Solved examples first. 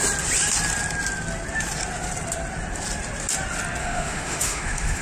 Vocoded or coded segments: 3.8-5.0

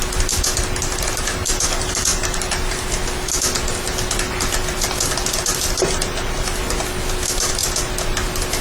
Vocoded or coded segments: none

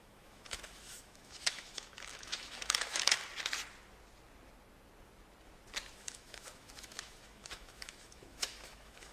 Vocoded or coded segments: 0.0-3.2; 5.9-9.1